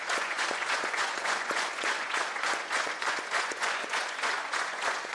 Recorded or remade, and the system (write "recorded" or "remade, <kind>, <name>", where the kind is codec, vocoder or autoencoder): remade, vocoder, Vocos